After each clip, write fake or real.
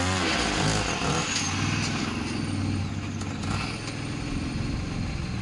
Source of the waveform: real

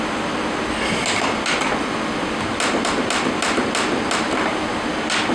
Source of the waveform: real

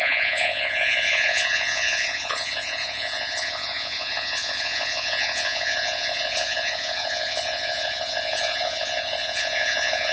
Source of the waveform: fake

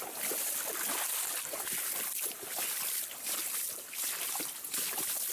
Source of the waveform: real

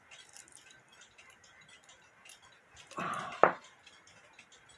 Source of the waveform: real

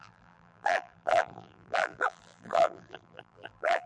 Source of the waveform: fake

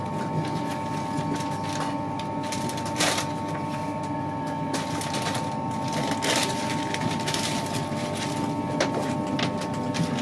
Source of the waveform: real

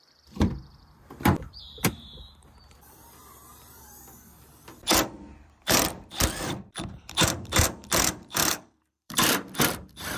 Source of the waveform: fake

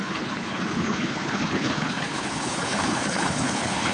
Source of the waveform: fake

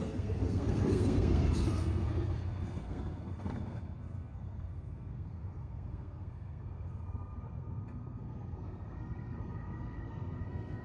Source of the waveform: fake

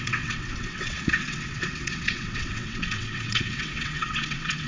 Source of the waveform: fake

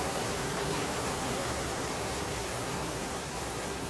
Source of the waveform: fake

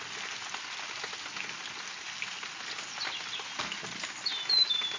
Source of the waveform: real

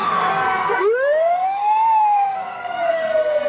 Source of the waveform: fake